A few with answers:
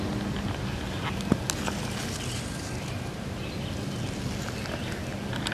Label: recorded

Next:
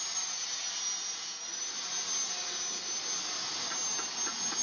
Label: recorded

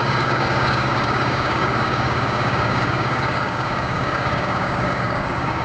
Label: remade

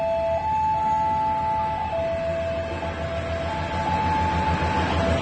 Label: recorded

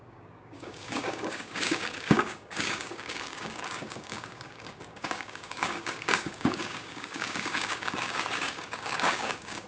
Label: remade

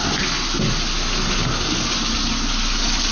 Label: recorded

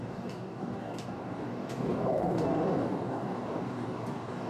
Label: remade